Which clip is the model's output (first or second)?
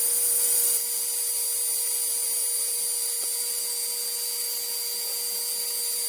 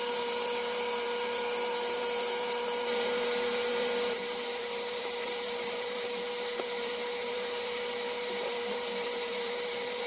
second